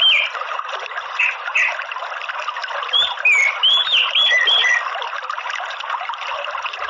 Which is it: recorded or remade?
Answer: recorded